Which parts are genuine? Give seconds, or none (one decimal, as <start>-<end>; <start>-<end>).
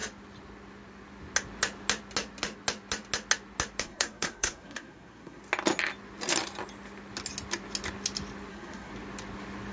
0.0-3.8; 5.4-8.5; 8.9-9.7